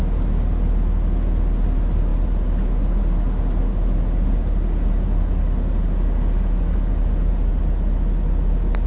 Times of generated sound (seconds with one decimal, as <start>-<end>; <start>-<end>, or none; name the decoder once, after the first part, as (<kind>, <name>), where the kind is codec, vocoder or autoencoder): none